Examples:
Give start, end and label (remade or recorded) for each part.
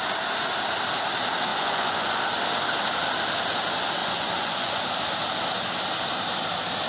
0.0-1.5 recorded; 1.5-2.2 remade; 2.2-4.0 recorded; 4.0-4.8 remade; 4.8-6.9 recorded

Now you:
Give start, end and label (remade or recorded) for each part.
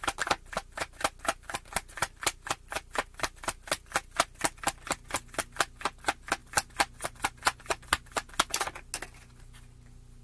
0.0-10.2 recorded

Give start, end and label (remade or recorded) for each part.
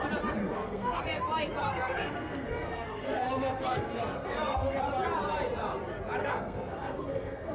0.0-0.4 recorded; 0.4-1.0 remade; 1.0-1.6 recorded; 1.6-4.8 remade; 4.8-6.2 recorded; 6.2-7.5 remade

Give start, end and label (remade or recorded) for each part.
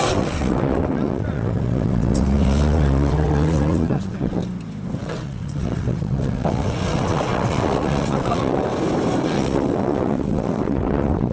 0.0-4.4 remade; 4.4-5.0 recorded; 5.0-8.7 remade; 8.7-9.2 recorded; 9.2-11.3 remade